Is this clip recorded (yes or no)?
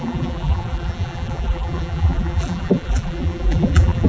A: no